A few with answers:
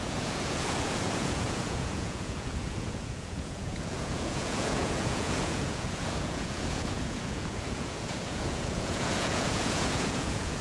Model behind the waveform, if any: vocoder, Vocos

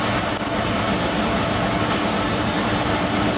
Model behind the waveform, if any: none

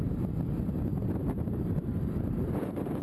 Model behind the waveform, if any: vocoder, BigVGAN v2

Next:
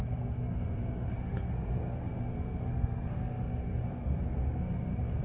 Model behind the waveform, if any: codec, SNAC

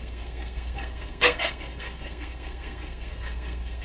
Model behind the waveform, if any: codec, SNAC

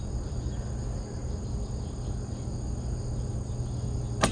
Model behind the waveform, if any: none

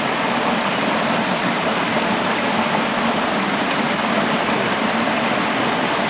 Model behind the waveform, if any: none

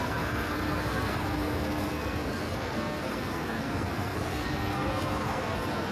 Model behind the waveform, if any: codec, SNAC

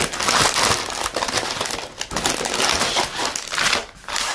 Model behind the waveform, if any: none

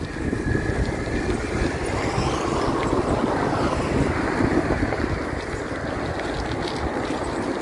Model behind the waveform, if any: none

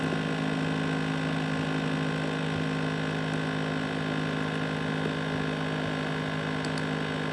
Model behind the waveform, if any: none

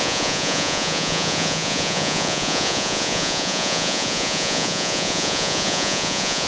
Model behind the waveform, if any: vocoder, Vocos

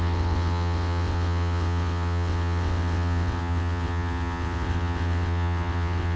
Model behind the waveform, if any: vocoder, WaveNeXt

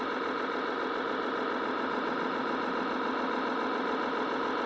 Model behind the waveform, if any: none